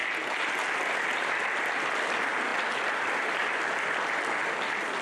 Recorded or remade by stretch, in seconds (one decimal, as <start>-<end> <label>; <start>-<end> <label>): 0.0-5.0 recorded